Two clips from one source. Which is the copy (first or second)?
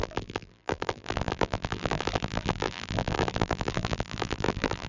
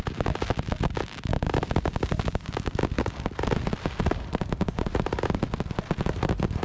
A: first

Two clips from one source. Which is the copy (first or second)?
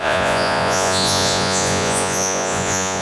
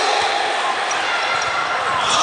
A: first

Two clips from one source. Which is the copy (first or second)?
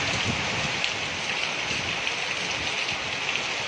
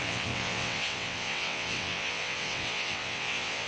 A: second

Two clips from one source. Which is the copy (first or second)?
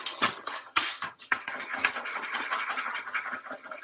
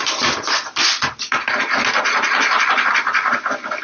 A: first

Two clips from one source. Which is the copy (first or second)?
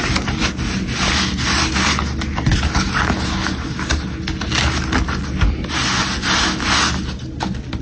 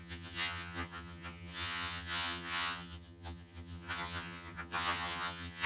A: second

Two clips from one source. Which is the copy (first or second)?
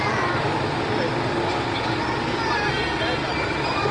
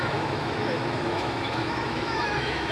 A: second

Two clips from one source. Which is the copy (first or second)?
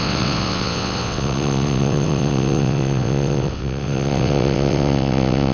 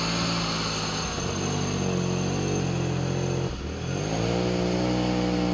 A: first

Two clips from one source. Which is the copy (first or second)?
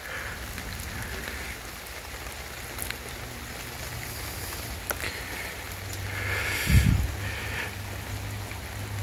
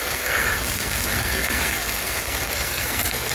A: second